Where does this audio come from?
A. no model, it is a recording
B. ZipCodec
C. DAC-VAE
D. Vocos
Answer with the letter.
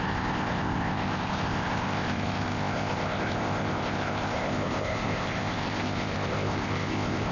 B